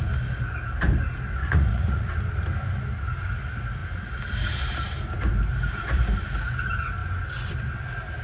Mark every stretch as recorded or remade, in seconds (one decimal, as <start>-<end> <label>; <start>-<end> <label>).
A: 0.0-1.4 recorded; 1.4-2.1 remade; 2.1-8.2 recorded